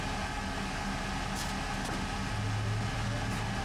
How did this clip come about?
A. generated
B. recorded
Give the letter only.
B